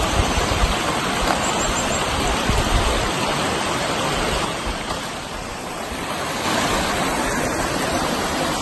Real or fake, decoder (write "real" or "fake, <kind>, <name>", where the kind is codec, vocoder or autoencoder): real